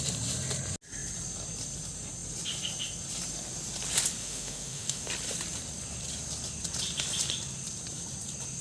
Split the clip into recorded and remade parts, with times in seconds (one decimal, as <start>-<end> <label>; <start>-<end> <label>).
0.0-4.2 recorded; 4.2-5.1 remade; 5.1-8.6 recorded